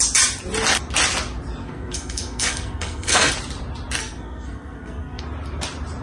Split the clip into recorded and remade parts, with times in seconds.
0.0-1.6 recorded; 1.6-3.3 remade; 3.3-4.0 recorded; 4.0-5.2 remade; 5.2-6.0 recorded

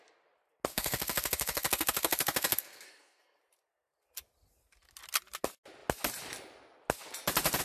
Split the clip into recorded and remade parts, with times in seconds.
0.0-0.7 recorded; 0.7-3.4 remade; 3.4-7.6 recorded